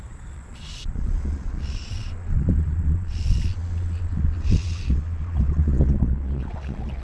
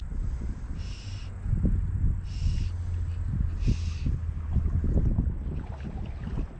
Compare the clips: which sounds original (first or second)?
second